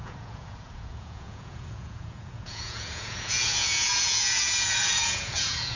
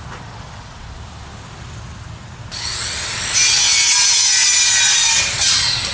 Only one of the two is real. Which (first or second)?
second